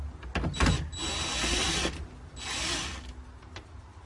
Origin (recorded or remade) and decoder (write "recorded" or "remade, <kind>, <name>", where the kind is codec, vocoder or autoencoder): recorded